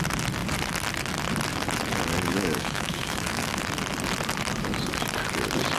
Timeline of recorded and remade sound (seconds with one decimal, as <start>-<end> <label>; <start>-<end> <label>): 0.0-2.3 recorded; 2.3-3.6 remade; 3.6-5.8 recorded